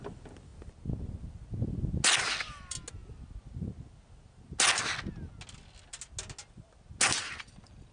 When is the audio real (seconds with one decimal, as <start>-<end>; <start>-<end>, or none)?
0.0-7.9